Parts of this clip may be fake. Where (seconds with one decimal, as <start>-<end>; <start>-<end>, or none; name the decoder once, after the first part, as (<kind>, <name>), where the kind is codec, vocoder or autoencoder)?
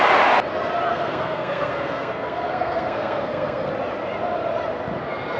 0.9-3.7 (codec, SNAC)